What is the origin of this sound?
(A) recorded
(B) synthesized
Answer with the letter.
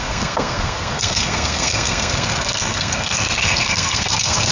B